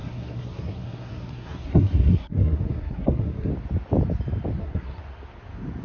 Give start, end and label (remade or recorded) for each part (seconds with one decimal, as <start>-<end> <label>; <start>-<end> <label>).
0.0-3.5 remade; 3.5-4.6 recorded; 4.6-5.0 remade; 5.0-5.8 recorded